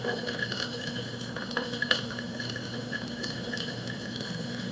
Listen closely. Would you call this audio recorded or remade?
remade